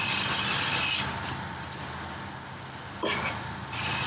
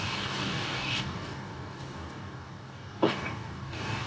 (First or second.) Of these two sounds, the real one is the first